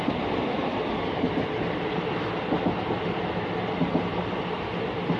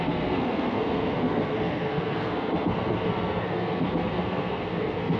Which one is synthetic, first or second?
second